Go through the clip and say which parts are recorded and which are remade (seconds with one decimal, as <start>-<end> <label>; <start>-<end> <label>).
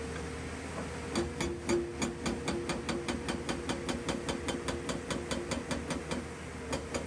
0.0-7.1 recorded